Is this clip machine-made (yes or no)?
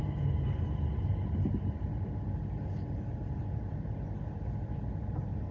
no